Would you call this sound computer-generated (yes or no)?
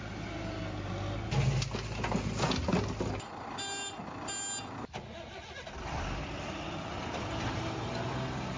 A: no